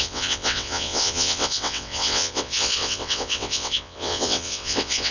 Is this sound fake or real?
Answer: fake